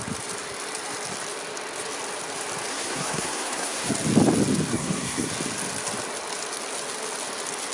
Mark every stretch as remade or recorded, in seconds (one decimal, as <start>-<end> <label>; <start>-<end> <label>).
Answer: 0.0-2.7 recorded; 2.7-3.9 remade; 3.9-4.7 recorded; 4.7-5.3 remade; 5.3-7.7 recorded